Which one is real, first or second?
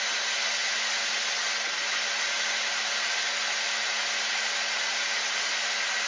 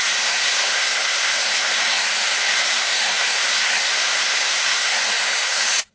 first